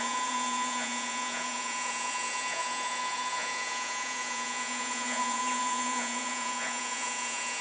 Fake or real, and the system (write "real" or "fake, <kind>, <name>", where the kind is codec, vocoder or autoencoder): fake, vocoder, Vocos